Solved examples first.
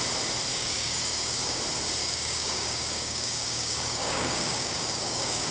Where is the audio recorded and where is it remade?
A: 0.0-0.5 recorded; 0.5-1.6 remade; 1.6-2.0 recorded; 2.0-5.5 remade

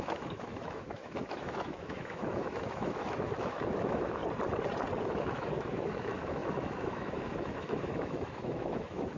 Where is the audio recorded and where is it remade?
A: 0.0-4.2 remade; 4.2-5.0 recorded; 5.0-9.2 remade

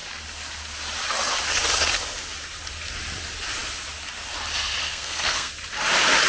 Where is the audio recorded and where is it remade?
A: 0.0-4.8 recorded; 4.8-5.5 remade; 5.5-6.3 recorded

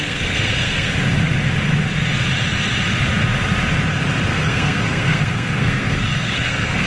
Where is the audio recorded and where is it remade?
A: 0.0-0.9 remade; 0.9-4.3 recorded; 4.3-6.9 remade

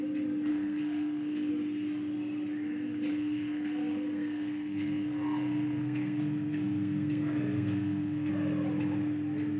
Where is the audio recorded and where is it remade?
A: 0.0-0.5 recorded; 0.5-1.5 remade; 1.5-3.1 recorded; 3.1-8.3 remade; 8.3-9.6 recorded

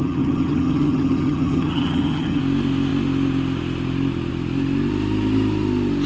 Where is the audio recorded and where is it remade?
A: 0.0-2.4 remade; 2.4-6.1 recorded